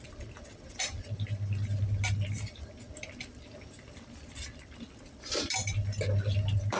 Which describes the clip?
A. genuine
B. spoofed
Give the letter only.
A